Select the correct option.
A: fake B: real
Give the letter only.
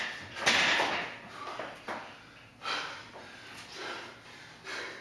B